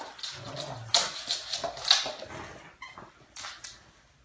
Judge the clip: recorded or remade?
recorded